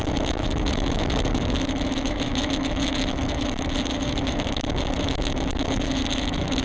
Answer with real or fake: fake